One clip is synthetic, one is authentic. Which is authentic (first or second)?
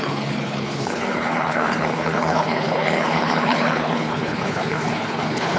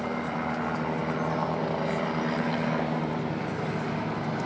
second